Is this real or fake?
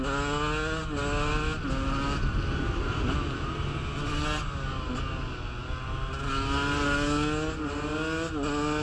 real